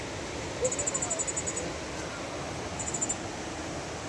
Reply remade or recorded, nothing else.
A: recorded